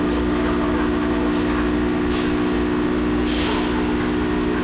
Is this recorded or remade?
recorded